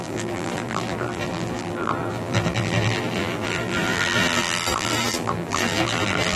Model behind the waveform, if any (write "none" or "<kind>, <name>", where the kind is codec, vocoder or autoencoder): vocoder, BigVGAN v2